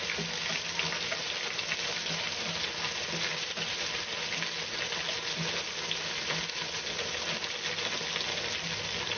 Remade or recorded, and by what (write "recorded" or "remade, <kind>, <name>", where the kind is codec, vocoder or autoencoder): recorded